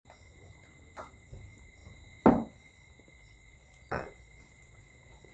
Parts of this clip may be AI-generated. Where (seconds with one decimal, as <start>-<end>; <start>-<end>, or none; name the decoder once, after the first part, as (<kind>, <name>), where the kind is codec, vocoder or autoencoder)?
3.1-5.3 (vocoder, Vocos)